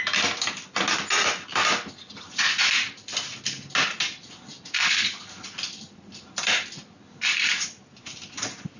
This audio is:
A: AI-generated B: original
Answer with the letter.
B